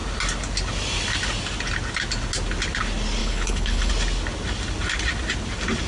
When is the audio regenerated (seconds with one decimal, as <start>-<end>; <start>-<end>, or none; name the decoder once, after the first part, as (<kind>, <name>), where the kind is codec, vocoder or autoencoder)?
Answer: 3.2-3.9 (codec, HILCodec)

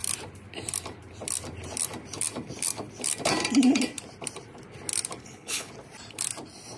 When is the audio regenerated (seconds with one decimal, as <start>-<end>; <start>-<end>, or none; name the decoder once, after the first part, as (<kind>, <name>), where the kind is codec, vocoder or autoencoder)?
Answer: 5.2-5.7 (codec, HILCodec)

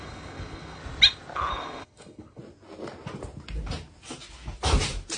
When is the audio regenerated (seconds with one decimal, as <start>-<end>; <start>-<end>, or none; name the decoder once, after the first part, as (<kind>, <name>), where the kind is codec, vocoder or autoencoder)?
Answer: 0.0-0.8 (codec, HILCodec); 1.5-2.4

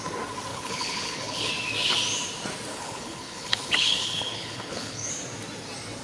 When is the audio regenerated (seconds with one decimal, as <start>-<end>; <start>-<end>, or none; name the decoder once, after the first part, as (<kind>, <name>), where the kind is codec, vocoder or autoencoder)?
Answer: 0.5-1.5 (codec, HILCodec); 2.7-5.1

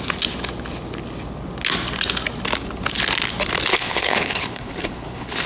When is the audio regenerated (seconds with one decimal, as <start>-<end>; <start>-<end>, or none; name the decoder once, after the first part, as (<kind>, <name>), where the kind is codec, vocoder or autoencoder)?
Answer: 3.7-5.5 (codec, HILCodec)

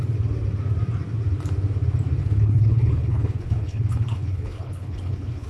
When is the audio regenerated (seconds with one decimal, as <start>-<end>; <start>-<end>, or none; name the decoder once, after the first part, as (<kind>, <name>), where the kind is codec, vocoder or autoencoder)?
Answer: 2.2-5.5 (codec, HILCodec)

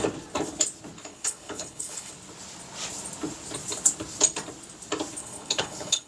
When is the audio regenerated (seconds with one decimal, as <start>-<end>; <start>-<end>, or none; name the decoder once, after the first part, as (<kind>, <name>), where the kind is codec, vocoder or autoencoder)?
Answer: 1.1-2.1 (codec, HILCodec); 5.2-6.1

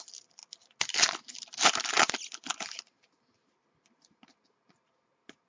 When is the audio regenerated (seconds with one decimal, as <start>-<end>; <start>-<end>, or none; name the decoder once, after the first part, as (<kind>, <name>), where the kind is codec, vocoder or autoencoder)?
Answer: none